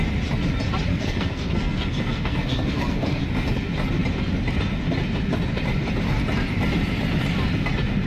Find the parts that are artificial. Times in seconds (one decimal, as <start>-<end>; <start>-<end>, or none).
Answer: 0.9-3.2